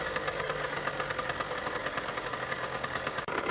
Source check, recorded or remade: remade